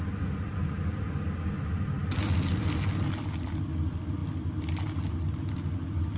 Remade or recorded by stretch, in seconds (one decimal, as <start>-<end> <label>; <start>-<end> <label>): 0.0-6.2 recorded